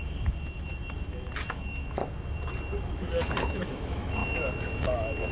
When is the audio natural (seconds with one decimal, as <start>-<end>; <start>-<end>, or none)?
0.7-1.5; 2.0-3.5